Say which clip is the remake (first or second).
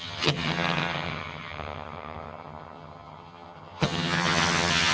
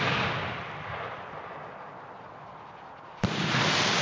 first